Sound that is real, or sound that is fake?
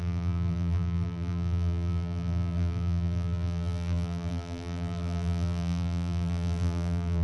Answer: fake